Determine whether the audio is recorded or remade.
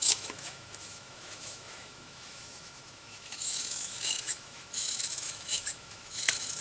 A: remade